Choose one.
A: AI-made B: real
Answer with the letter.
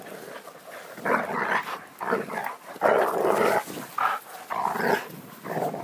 B